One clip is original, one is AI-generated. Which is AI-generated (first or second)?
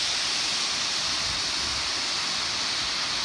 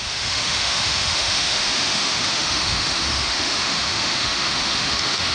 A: second